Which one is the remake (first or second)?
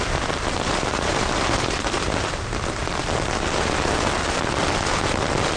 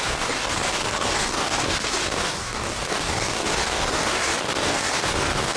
second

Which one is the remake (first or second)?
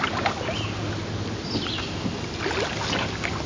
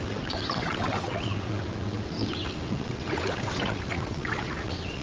second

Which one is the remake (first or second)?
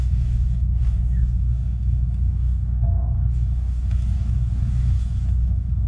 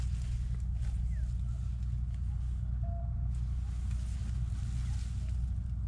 first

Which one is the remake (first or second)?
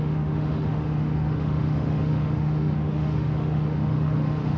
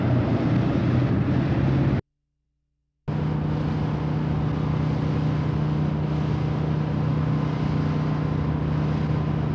first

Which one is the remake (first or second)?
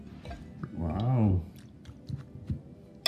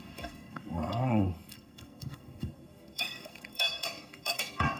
second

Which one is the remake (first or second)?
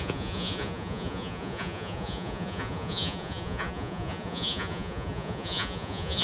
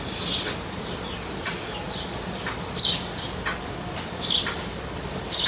first